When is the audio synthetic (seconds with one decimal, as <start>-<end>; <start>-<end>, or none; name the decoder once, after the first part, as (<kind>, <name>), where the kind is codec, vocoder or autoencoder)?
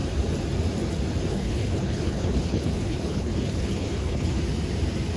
1.3-4.4 (codec, HILCodec)